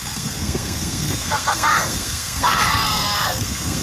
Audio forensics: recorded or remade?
remade